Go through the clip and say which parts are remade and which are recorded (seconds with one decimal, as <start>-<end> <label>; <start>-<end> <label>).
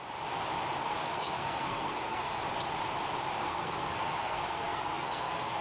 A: 0.0-0.8 recorded; 0.8-2.4 remade; 2.4-3.4 recorded; 3.4-5.6 remade